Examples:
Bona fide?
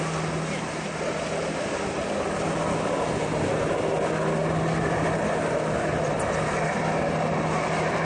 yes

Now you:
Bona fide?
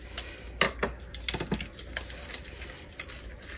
yes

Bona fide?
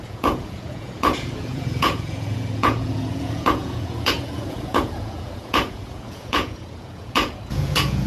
no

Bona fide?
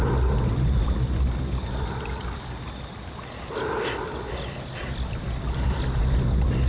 yes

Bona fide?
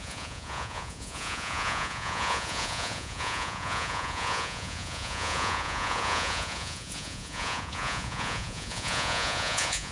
no